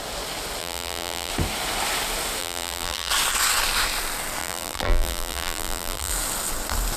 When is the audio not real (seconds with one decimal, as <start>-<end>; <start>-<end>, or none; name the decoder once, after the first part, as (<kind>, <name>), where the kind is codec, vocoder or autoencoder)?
0.6-1.3 (vocoder, BigVGAN v2); 2.4-3.1; 4.4-6.1